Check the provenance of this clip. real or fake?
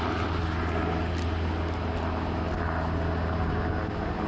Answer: real